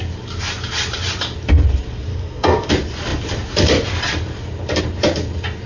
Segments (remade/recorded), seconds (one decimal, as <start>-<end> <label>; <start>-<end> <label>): 0.0-2.1 recorded; 2.1-2.7 remade; 2.7-5.7 recorded